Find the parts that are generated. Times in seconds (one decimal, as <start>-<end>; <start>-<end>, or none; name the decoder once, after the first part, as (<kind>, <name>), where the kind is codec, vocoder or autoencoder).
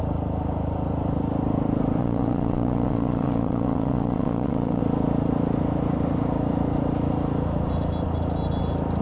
2.0-4.8 (vocoder, Vocos)